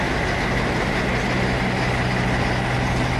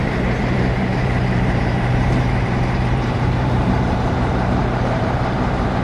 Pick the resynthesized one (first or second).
second